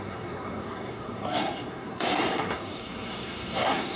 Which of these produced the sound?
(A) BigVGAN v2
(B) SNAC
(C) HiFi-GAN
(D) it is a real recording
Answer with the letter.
B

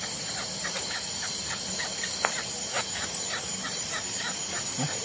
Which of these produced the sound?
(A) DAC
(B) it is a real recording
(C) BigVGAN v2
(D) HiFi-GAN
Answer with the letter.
B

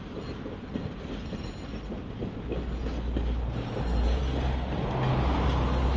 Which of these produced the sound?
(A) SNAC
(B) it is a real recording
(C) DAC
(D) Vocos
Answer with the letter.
B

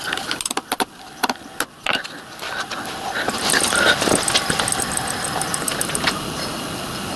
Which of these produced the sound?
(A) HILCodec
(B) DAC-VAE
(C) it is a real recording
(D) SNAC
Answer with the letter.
C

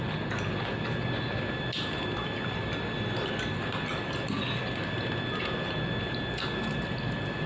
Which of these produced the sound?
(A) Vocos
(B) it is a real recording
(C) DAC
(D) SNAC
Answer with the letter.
B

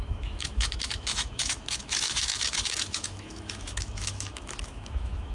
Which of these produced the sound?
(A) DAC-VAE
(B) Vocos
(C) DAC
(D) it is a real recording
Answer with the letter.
A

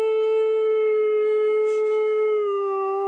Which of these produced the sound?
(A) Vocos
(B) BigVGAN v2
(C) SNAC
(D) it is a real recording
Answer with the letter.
C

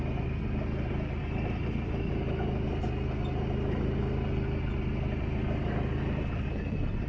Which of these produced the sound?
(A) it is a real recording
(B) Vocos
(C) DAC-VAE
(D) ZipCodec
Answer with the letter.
A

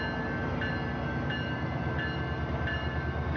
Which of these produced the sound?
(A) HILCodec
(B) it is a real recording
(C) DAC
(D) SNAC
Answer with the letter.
B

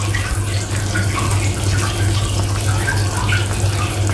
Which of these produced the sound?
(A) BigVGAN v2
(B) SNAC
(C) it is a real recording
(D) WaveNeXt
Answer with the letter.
C